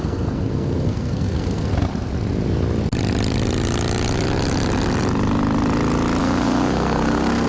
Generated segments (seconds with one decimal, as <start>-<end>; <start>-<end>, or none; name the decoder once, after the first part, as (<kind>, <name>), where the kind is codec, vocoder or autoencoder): 0.0-1.7 (codec, SNAC); 6.2-7.5